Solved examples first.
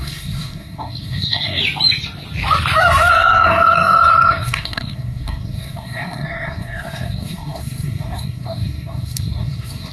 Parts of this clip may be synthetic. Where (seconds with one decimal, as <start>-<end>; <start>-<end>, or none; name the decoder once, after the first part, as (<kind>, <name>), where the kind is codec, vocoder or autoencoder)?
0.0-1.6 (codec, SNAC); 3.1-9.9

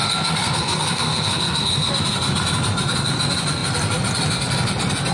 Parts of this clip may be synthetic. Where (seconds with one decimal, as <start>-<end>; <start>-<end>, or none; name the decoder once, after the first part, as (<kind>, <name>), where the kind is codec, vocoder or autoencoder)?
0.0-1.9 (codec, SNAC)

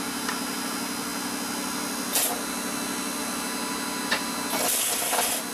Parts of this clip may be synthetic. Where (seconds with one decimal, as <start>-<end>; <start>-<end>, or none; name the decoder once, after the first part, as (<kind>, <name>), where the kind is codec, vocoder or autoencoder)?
none

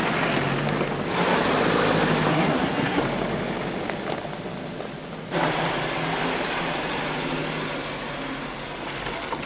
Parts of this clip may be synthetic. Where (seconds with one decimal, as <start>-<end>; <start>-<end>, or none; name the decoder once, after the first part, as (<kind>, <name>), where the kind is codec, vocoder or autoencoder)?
2.3-3.0 (codec, SNAC)